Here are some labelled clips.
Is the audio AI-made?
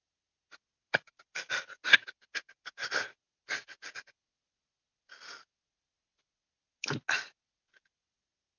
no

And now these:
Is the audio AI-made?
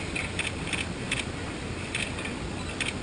no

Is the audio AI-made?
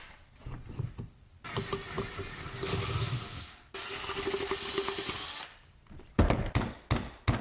no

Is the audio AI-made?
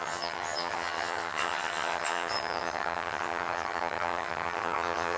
yes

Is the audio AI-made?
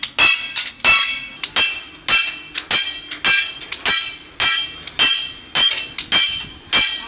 no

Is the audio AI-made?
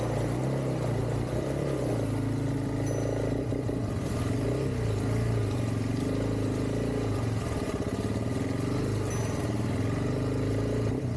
no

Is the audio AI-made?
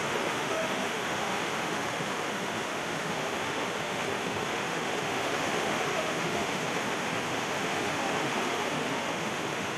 yes